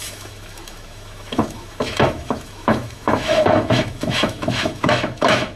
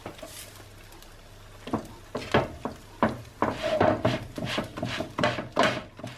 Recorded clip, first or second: second